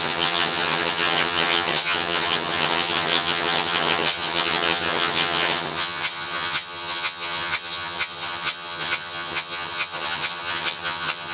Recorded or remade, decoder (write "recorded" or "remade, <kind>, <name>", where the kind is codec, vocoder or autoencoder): remade, vocoder, HiFi-GAN